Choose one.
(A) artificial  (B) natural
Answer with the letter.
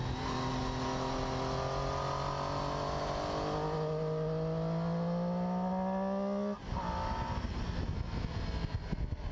B